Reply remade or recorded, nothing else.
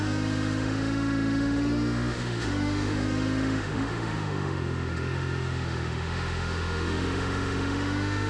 remade